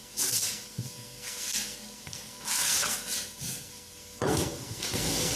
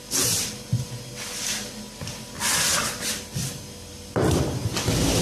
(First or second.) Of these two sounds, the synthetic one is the first